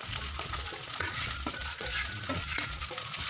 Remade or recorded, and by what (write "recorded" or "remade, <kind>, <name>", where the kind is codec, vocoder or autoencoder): remade, vocoder, Vocos